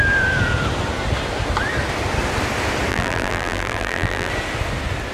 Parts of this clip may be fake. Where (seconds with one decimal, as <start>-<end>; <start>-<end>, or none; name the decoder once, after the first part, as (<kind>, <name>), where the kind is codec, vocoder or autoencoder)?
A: 2.9-4.3 (vocoder, BigVGAN v2)